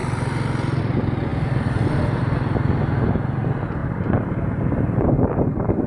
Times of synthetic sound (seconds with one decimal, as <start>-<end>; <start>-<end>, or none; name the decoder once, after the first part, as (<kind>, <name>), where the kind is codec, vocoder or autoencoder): 3.8-5.9 (vocoder, BigVGAN v2)